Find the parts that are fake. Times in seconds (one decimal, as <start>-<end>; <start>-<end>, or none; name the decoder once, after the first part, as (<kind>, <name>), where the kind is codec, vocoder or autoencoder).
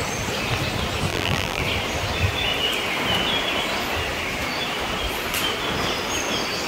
1.1-1.6 (vocoder, BigVGAN v2)